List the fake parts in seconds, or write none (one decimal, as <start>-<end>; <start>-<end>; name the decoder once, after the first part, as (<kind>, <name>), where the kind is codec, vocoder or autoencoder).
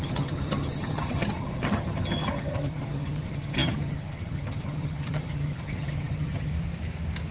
0.0-6.5 (vocoder, HiFi-GAN)